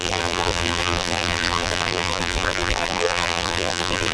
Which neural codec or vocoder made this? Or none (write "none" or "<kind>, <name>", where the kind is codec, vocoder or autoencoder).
vocoder, BigVGAN v2